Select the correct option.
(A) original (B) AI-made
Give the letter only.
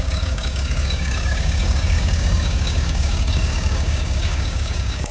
B